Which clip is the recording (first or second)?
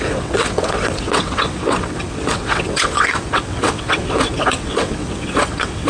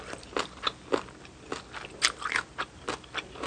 second